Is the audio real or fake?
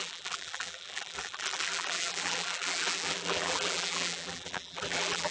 fake